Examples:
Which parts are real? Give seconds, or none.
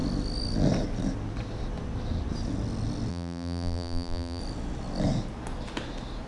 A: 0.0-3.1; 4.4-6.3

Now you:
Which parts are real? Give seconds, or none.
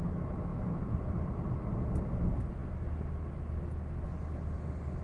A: 0.0-0.5; 1.5-5.0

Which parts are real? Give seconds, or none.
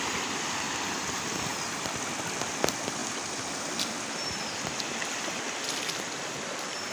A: 0.0-6.9